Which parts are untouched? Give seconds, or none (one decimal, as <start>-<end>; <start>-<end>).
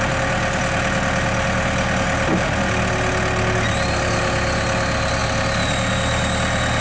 0.0-6.8